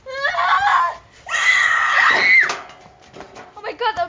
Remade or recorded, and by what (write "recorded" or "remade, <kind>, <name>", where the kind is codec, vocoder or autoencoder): recorded